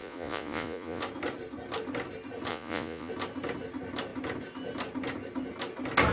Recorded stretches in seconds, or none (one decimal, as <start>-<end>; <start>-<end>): 1.0-2.5; 3.1-6.1